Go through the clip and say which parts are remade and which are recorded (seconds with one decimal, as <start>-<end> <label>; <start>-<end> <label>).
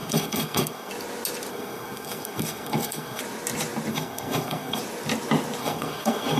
0.0-0.9 remade; 0.9-1.5 recorded; 1.5-3.2 remade; 3.2-3.9 recorded; 3.9-4.8 remade; 4.8-5.6 recorded; 5.6-6.4 remade